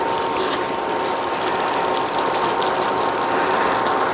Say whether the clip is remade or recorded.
recorded